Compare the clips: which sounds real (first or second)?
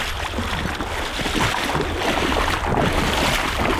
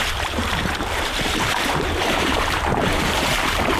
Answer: first